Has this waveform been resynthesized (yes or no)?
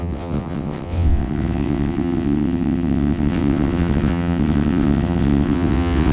yes